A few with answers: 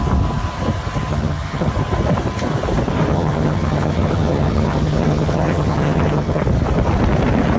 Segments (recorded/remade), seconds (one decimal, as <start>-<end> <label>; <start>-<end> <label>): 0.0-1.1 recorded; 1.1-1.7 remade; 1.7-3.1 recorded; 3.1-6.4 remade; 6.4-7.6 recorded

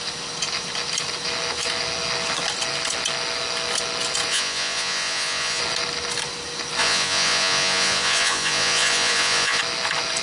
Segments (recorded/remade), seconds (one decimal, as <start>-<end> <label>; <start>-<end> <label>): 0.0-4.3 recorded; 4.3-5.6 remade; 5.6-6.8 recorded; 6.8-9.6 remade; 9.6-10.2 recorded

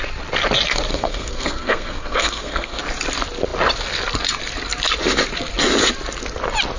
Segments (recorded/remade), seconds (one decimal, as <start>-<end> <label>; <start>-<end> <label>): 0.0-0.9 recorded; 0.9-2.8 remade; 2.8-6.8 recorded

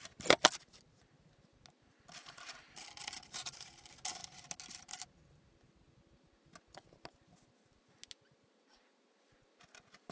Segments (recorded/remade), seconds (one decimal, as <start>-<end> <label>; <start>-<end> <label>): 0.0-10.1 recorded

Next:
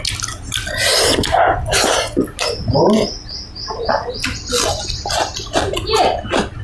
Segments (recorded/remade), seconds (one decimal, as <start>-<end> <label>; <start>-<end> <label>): 0.0-6.6 recorded

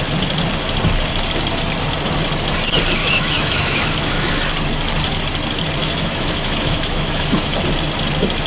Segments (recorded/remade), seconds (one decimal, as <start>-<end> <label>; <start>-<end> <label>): 0.0-3.0 recorded; 3.0-4.3 remade; 4.3-5.8 recorded; 5.8-7.6 remade; 7.6-8.5 recorded